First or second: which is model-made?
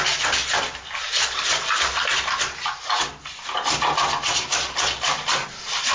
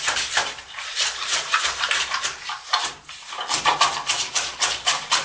second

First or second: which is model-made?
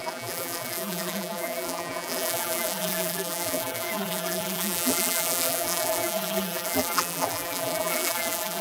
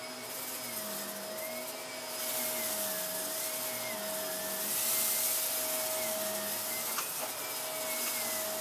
first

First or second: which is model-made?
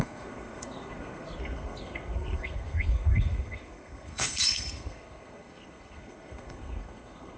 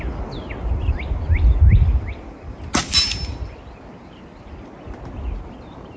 first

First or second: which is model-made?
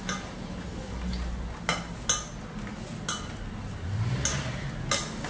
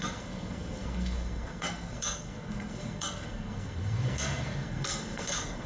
second